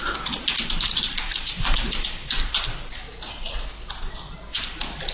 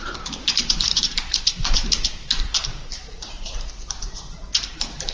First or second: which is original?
first